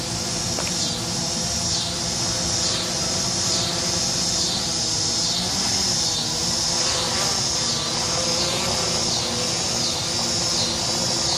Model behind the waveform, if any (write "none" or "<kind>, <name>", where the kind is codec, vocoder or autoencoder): none